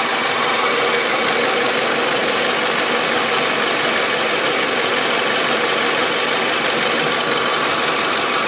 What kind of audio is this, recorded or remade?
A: recorded